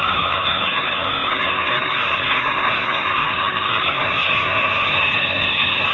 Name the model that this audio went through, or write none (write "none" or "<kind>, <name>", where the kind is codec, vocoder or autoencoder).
codec, SNAC